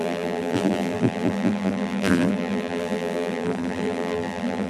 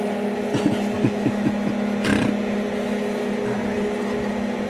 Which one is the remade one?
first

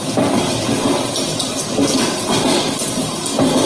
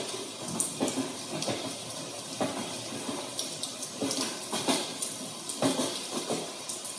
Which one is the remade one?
second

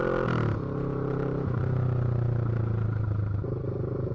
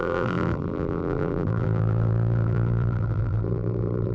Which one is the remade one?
second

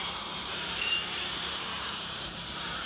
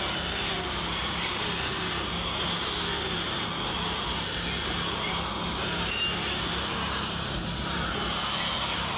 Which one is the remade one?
first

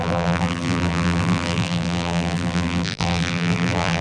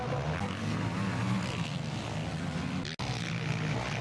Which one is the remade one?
first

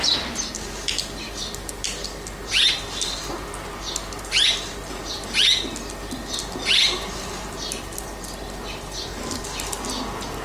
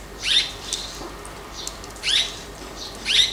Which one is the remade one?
second